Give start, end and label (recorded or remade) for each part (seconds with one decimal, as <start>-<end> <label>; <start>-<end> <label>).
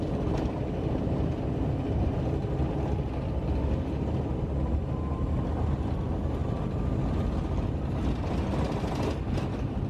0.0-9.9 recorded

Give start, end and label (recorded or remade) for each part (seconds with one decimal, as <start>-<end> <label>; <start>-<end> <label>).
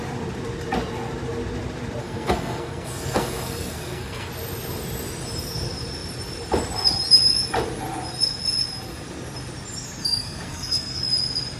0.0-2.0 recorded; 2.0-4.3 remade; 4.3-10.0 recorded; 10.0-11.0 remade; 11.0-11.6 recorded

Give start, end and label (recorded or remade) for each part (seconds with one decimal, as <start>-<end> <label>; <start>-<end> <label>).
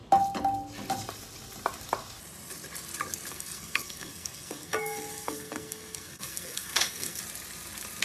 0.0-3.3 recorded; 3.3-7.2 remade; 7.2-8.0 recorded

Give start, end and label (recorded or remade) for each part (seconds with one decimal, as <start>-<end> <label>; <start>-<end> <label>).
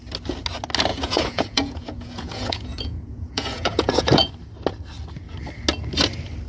0.0-0.9 recorded; 0.9-4.3 remade; 4.3-6.5 recorded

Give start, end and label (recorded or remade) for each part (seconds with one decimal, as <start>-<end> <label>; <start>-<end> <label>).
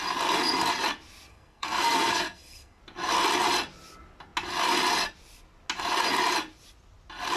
0.0-1.3 recorded; 1.3-2.8 remade; 2.8-7.4 recorded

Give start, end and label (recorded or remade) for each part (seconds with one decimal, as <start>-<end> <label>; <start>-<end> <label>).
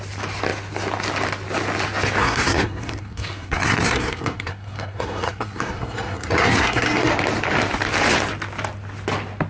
0.0-2.2 recorded; 2.2-7.1 remade; 7.1-9.5 recorded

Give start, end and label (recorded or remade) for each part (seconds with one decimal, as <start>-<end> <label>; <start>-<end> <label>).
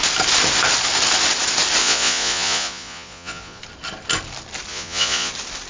0.0-1.8 recorded; 1.8-3.6 remade; 3.6-4.7 recorded; 4.7-5.3 remade; 5.3-5.7 recorded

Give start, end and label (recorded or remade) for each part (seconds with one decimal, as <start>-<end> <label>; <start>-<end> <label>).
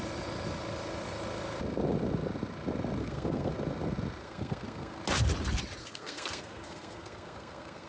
0.0-3.0 recorded; 3.0-3.5 remade; 3.5-4.2 recorded; 4.2-5.0 remade; 5.0-5.8 recorded; 5.8-7.9 remade